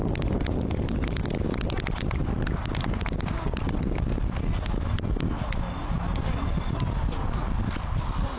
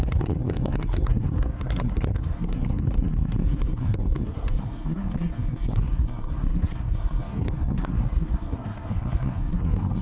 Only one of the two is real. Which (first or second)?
first